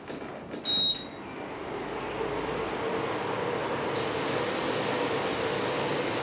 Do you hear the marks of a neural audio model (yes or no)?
no